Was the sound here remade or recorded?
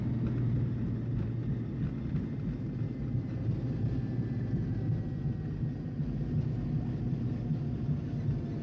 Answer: recorded